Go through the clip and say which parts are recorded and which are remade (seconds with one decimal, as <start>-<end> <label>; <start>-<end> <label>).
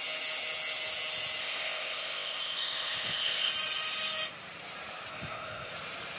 0.0-1.4 recorded; 1.4-3.5 remade; 3.5-5.1 recorded; 5.1-5.7 remade; 5.7-6.2 recorded